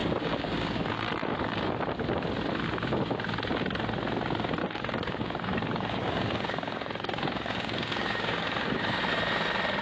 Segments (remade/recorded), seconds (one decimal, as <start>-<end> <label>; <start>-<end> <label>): 0.0-1.1 remade; 1.1-4.6 recorded; 4.6-9.0 remade; 9.0-9.8 recorded

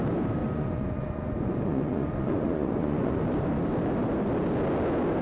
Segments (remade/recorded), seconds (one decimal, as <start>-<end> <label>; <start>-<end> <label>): 0.0-0.4 recorded; 0.4-3.2 remade; 3.2-5.2 recorded